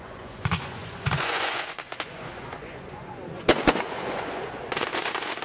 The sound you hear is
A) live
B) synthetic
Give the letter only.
B